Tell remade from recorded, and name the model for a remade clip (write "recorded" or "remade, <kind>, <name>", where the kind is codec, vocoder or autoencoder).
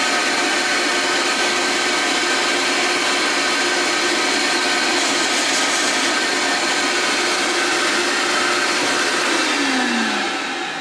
recorded